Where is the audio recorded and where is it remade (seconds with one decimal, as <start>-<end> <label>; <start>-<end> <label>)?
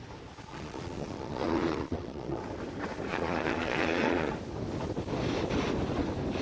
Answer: 0.0-0.5 recorded; 0.5-2.4 remade; 2.4-3.1 recorded; 3.1-4.3 remade; 4.3-6.4 recorded